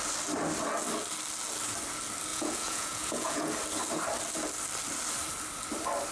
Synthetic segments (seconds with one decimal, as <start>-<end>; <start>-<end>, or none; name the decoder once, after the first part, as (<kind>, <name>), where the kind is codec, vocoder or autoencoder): 2.3-3.5 (vocoder, Vocos)